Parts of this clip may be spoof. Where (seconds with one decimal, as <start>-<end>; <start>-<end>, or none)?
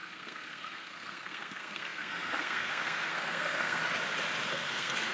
0.0-3.8; 4.5-5.1